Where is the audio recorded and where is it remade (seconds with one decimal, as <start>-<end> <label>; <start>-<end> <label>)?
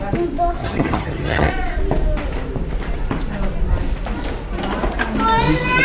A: 0.0-0.6 recorded; 0.6-1.5 remade; 1.5-5.8 recorded